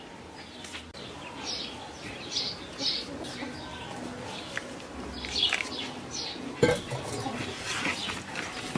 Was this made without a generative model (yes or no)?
yes